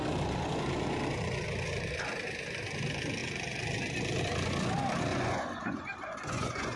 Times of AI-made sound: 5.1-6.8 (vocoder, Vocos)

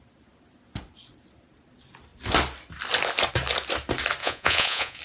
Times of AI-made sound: 4.2-5.0 (vocoder, Vocos)

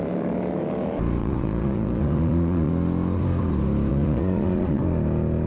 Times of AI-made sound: 1.2-2.7 (vocoder, Vocos); 3.9-4.8